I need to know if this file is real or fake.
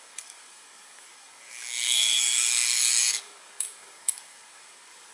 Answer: fake